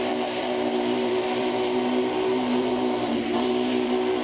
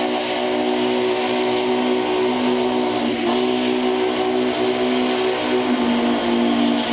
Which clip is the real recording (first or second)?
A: second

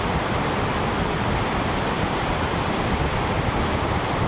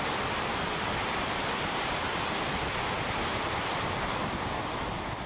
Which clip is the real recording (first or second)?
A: second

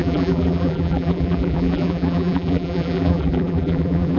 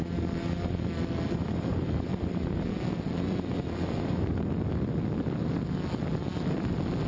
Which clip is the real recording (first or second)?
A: second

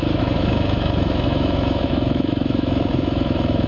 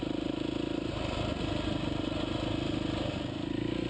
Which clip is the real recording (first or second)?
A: second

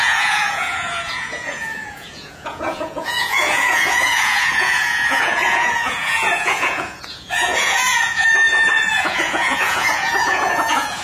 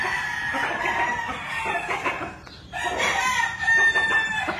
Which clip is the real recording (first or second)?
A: second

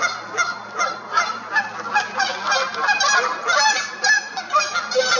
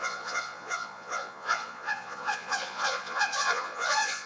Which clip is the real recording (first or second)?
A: first